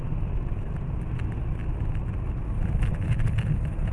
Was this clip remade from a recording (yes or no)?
no